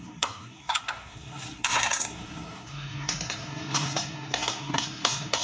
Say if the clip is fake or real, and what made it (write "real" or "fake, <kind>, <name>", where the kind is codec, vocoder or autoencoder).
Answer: fake, codec, SNAC